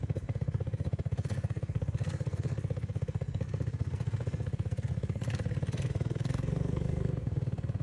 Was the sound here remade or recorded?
remade